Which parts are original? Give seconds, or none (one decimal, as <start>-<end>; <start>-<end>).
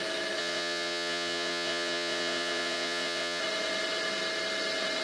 0.0-0.4; 3.4-5.0